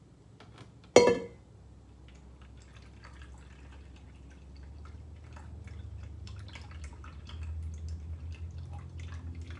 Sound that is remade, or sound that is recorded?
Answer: recorded